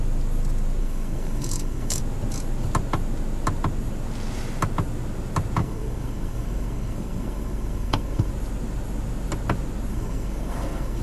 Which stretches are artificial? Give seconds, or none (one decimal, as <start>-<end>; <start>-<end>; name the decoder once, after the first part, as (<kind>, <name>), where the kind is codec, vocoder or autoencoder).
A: 0.8-2.0 (codec, SNAC); 5.6-8.3; 9.9-11.0